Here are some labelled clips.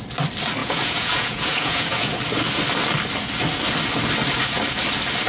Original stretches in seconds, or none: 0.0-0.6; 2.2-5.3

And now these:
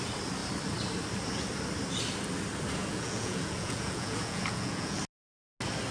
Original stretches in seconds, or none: 0.0-2.8; 5.0-5.9

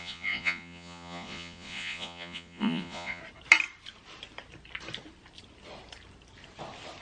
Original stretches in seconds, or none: 3.2-7.0

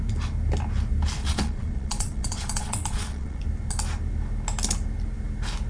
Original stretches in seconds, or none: 0.0-1.2; 3.4-5.7

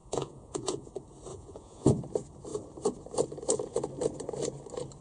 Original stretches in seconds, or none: 0.9-1.3; 2.0-5.0

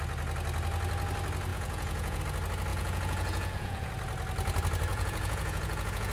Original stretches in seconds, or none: 0.0-1.5; 2.2-2.7; 3.9-4.9

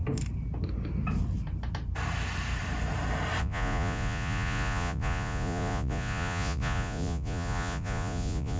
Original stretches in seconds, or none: 0.0-3.4

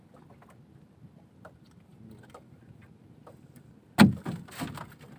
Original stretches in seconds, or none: 0.0-5.2